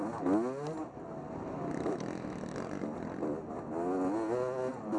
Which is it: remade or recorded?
recorded